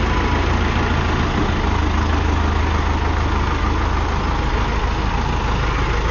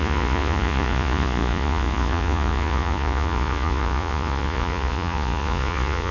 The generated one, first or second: second